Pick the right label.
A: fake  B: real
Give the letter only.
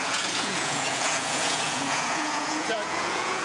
A